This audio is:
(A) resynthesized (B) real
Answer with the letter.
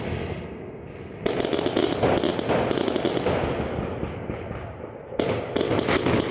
B